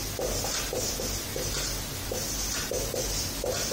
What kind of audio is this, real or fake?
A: real